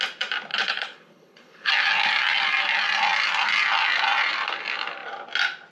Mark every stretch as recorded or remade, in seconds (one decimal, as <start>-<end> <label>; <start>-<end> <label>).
0.0-0.5 recorded; 0.5-1.7 remade; 1.7-5.7 recorded